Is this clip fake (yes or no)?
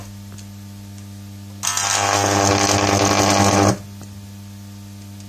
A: no